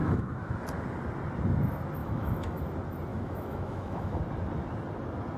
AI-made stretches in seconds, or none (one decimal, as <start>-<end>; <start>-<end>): 0.0-0.5; 2.0-2.6; 3.1-4.2